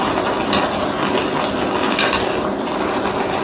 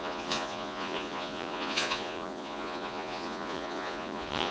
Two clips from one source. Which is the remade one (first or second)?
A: second